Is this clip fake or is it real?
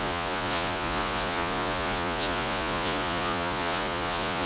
fake